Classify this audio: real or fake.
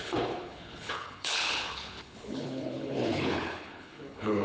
fake